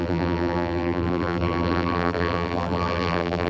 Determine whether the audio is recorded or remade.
remade